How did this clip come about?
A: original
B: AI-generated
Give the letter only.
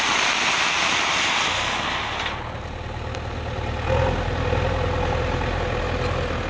A